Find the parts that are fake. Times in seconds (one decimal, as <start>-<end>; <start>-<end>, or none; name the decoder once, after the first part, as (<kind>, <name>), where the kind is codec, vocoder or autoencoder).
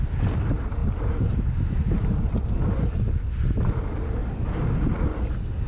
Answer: none